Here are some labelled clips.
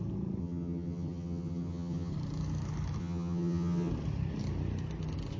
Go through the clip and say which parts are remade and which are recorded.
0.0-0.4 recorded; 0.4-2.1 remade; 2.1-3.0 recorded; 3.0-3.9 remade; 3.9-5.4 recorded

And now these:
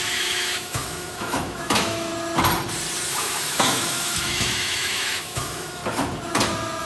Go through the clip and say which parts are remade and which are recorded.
0.0-2.1 remade; 2.1-3.1 recorded; 3.1-5.8 remade; 5.8-6.8 recorded